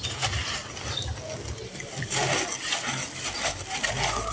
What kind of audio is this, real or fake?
real